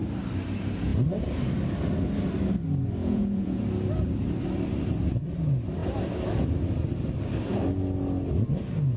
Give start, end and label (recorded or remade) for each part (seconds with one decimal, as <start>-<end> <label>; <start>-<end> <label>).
0.0-3.0 recorded; 3.0-3.6 remade; 3.6-9.0 recorded